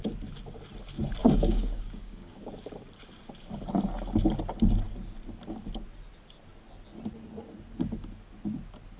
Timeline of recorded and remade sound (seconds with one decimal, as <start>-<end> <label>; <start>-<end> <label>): 0.0-1.2 recorded; 1.2-2.4 remade; 2.4-9.0 recorded